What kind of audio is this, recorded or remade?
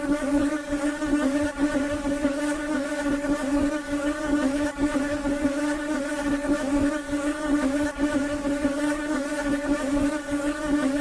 remade